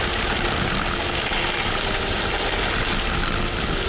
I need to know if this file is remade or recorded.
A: recorded